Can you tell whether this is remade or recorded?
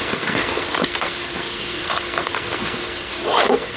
remade